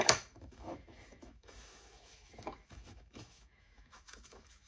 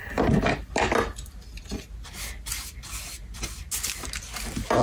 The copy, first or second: first